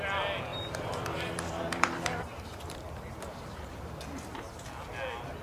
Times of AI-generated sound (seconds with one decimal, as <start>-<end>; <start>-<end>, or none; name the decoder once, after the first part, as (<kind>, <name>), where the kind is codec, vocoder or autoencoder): 0.5-3.7 (vocoder, BigVGAN v2)

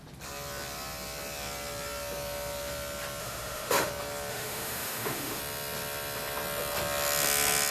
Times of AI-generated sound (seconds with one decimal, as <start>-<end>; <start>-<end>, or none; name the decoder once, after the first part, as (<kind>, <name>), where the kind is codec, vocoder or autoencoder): 3.2-3.9 (autoencoder, DAC-VAE); 4.3-5.4